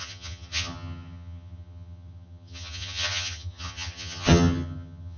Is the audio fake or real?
fake